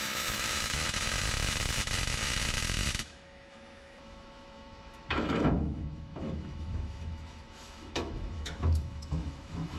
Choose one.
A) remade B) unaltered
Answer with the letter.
A